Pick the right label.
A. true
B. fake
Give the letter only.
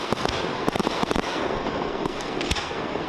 B